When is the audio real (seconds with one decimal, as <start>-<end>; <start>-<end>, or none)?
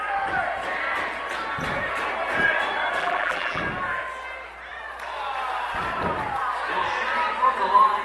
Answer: 0.0-3.0; 3.6-8.0